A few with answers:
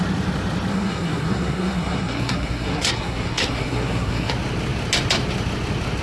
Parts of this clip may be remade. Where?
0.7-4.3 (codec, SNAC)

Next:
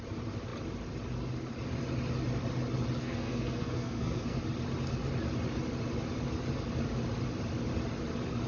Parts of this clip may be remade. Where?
3.0-4.4 (codec, SNAC)

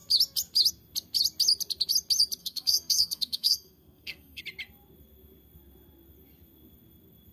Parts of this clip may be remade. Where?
2.4-4.4 (codec, SNAC)

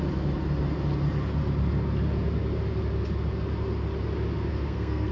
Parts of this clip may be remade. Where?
4.5-5.1 (codec, SNAC)

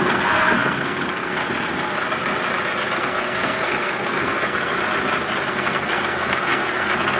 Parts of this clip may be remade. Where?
0.0-1.4 (codec, SNAC); 3.0-4.8; 5.5-7.2